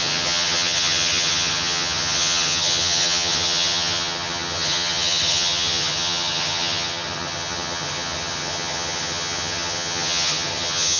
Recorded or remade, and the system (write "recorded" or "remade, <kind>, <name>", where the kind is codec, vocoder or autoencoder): remade, vocoder, HiFi-GAN